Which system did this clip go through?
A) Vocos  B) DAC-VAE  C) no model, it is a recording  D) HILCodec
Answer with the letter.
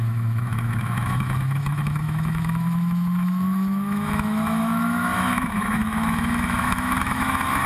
B